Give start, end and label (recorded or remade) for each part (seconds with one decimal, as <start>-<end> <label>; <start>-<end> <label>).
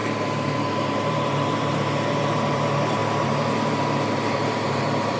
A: 0.0-5.2 remade